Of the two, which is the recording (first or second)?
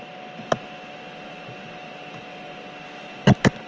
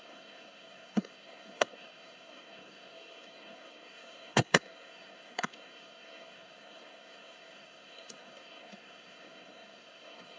first